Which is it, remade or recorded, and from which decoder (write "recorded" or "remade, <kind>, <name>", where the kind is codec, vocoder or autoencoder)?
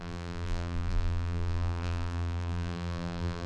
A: remade, vocoder, BigVGAN v2